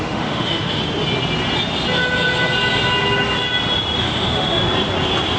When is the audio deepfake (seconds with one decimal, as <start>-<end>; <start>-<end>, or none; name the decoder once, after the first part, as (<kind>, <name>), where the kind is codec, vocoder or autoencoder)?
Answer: 0.0-0.8 (autoencoder, DAC-VAE); 4.0-4.6